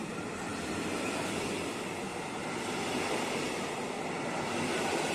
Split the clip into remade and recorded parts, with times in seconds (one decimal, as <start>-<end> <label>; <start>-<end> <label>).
0.0-5.1 recorded